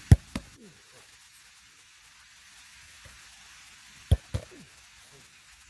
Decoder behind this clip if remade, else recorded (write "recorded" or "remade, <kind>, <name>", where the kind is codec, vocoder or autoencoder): recorded